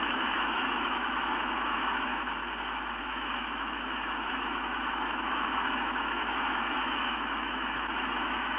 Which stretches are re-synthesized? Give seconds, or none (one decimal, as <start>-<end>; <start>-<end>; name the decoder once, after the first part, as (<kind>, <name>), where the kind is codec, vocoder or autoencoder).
0.0-2.1 (autoencoder, DAC-VAE); 3.0-8.6